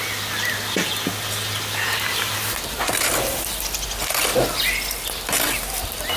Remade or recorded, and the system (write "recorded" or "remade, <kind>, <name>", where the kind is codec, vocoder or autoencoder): recorded